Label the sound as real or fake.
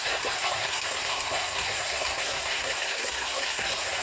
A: fake